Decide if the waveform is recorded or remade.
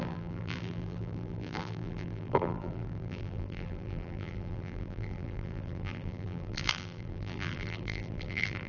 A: remade